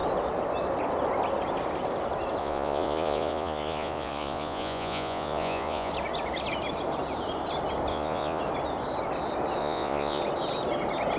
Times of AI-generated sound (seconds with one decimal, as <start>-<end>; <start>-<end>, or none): 2.4-5.9; 7.9-8.4; 9.6-10.2